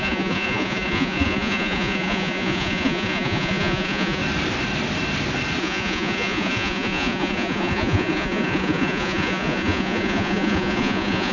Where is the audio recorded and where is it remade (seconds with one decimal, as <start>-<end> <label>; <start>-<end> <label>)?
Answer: 0.0-4.2 remade; 4.2-5.6 recorded; 5.6-11.3 remade

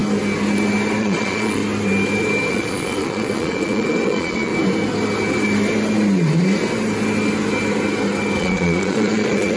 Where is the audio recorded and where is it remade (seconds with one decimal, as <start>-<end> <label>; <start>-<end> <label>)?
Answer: 0.0-1.0 recorded; 1.0-1.6 remade; 1.6-2.5 recorded; 2.5-4.5 remade; 4.5-8.4 recorded; 8.4-9.6 remade

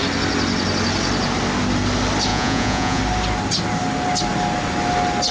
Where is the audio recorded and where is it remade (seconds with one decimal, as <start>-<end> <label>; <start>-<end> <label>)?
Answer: 0.0-2.3 recorded; 2.3-3.0 remade; 3.0-5.3 recorded